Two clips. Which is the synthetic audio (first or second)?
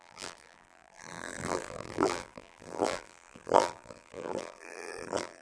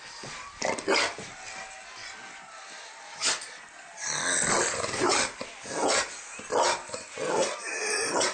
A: first